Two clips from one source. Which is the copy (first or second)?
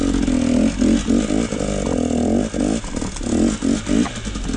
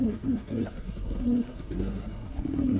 second